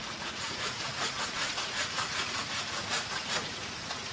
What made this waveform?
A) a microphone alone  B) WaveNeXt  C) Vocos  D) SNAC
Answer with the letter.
C